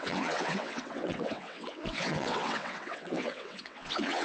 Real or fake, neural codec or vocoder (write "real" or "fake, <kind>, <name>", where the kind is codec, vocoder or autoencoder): fake, vocoder, WaveNeXt